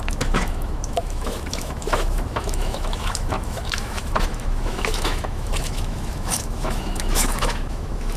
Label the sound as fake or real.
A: fake